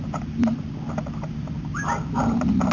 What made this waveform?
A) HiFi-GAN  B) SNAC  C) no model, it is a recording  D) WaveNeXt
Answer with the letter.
C